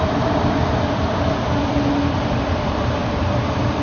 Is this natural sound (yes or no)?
no